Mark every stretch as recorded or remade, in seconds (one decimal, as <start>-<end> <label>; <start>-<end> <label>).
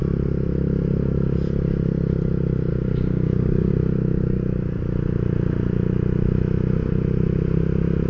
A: 0.0-2.7 recorded; 2.7-3.7 remade; 3.7-8.1 recorded